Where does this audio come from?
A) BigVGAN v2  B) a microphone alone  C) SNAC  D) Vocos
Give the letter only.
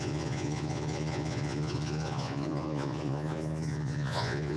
D